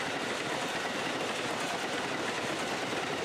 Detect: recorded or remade recorded